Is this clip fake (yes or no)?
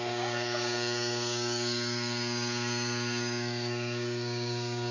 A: yes